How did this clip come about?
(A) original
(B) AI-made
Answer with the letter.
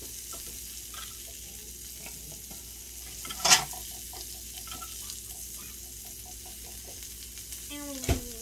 A